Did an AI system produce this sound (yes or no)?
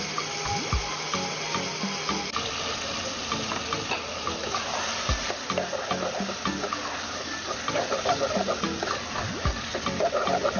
no